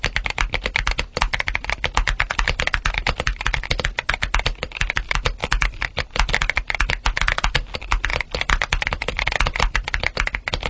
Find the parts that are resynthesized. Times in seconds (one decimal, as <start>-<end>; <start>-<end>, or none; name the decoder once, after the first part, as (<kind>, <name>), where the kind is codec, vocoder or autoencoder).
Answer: none